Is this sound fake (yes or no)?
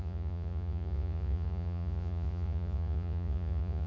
yes